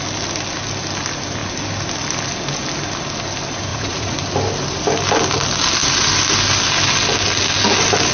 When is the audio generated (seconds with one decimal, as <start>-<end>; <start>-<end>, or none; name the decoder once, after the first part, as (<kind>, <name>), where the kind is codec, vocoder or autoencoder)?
3.7-4.2 (vocoder, Vocos)